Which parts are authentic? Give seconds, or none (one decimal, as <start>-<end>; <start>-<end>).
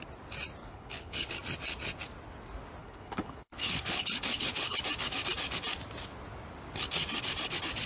0.0-0.6; 1.3-2.8; 4.8-7.9